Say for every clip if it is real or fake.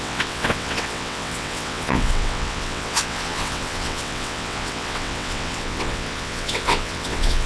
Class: fake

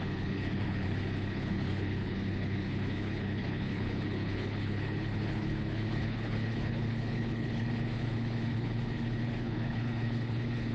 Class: fake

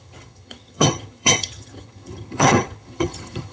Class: fake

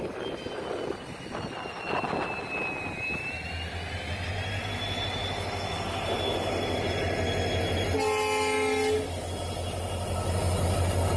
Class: real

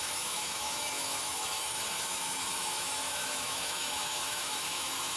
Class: fake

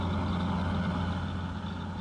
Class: real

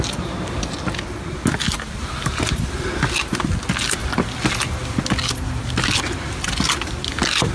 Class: real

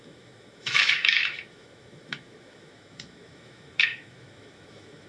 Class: fake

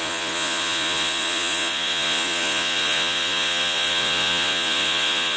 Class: fake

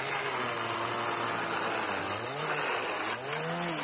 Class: real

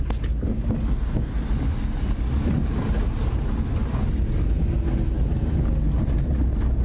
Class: real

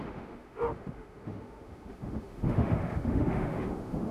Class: fake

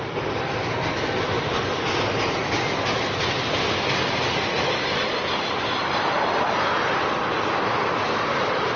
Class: real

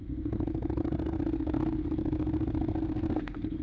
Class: fake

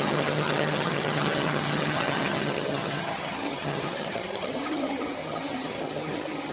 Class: fake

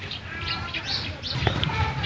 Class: fake